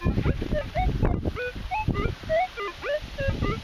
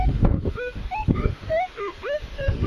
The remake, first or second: second